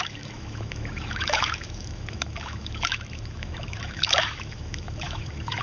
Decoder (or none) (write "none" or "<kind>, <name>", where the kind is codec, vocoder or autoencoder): autoencoder, DAC-VAE